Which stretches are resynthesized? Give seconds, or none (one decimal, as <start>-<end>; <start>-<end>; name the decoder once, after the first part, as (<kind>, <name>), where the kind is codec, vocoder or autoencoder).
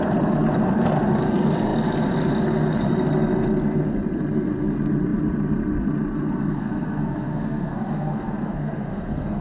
6.5-9.4 (codec, SNAC)